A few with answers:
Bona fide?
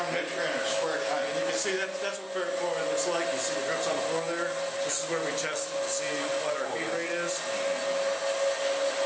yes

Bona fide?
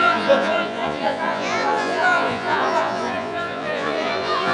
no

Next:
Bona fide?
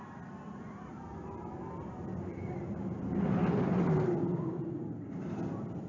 no